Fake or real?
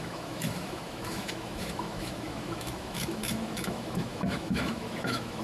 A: fake